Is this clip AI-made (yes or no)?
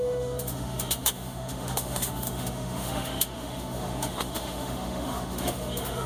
yes